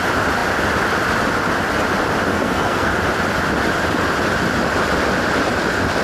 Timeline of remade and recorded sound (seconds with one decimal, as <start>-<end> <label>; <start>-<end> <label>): 0.0-2.3 recorded; 2.3-2.9 remade; 2.9-6.0 recorded